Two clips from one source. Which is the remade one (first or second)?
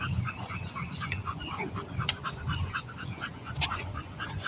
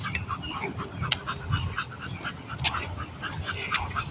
first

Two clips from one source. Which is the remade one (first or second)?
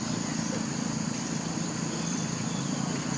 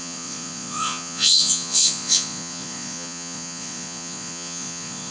second